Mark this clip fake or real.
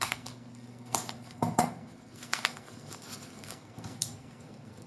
fake